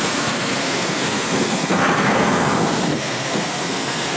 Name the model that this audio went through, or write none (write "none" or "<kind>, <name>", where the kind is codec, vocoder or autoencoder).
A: codec, SNAC